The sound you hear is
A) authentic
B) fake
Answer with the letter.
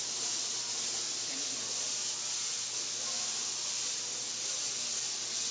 A